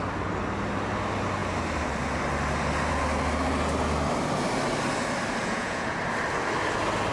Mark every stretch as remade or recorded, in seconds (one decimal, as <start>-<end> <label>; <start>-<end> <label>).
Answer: 0.0-5.4 recorded; 5.4-6.0 remade; 6.0-7.1 recorded